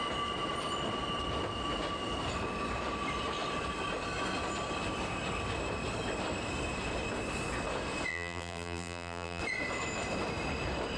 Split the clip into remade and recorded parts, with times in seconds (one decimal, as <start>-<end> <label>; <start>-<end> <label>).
0.0-8.1 recorded; 8.1-9.4 remade; 9.4-11.0 recorded